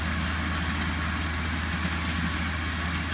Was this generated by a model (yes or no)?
no